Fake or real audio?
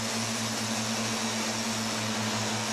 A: real